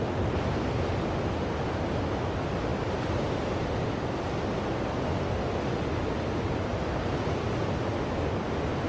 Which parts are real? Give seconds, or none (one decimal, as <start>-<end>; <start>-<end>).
0.0-8.9